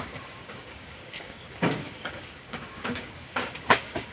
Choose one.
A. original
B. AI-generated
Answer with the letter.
B